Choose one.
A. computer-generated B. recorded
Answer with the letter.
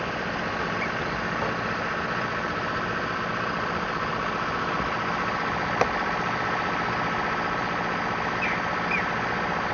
B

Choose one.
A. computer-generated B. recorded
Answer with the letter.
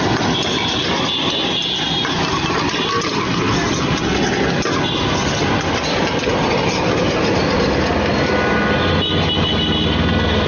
B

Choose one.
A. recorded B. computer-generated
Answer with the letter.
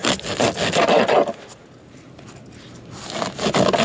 A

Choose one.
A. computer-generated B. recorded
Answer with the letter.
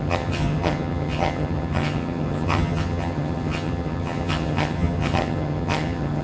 A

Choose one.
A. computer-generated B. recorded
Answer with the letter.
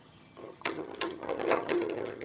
A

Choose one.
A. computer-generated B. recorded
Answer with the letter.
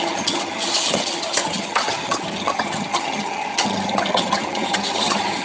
A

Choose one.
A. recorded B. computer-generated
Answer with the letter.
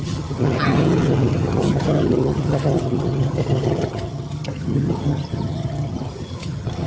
B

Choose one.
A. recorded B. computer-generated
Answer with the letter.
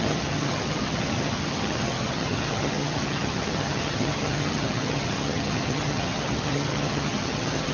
B